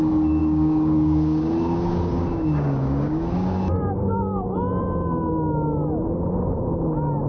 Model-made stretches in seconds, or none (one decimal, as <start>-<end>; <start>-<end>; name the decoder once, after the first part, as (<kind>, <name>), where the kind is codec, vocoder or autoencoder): 0.4-4.8 (codec, DAC)